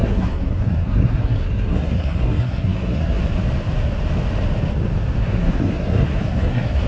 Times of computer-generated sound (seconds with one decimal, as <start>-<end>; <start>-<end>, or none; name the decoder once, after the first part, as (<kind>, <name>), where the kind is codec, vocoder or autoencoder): 0.0-3.2 (codec, SNAC); 5.2-6.9